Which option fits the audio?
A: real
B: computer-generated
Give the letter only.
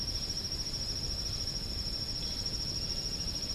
A